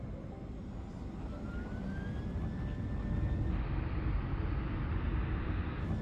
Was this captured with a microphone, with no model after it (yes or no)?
yes